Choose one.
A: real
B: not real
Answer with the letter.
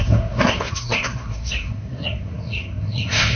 B